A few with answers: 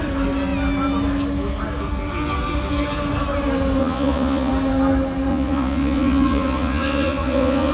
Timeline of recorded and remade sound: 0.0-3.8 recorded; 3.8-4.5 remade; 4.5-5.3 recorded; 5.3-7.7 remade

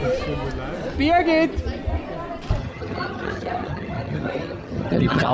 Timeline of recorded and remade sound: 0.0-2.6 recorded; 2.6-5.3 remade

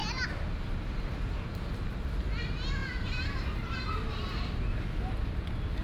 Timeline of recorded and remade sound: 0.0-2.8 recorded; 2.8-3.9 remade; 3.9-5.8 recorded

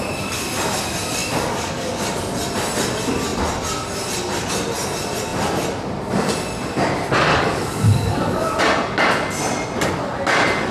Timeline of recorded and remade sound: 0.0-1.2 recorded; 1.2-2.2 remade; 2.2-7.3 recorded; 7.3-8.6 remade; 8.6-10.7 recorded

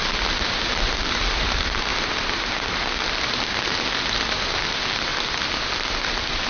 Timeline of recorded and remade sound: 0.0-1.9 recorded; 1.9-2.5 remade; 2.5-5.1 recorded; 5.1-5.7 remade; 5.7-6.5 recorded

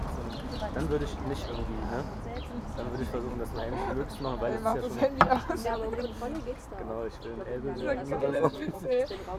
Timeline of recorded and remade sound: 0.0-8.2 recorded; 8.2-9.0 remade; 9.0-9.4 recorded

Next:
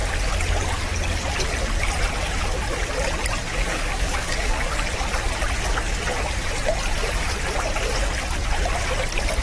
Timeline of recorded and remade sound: 0.0-3.5 recorded; 3.5-4.7 remade; 4.7-9.4 recorded

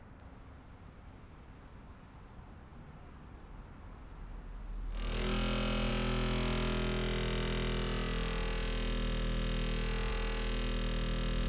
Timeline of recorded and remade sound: 0.0-11.5 recorded